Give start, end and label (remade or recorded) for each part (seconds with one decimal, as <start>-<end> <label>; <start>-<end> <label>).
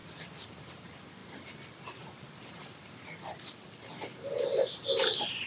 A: 0.0-5.5 recorded